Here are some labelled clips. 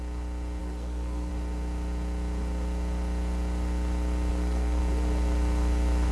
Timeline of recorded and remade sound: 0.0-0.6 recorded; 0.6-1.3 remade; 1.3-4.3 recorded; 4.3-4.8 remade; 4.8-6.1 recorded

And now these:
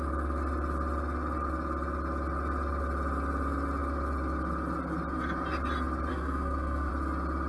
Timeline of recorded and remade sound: 0.0-6.1 recorded; 6.1-6.9 remade; 6.9-7.5 recorded

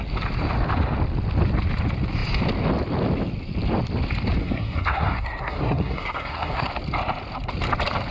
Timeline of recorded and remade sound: 0.0-4.4 recorded; 4.4-6.7 remade; 6.7-8.1 recorded

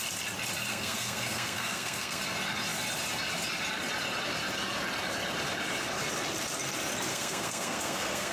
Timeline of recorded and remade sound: 0.0-0.7 recorded; 0.7-2.2 remade; 2.2-7.1 recorded; 7.1-8.3 remade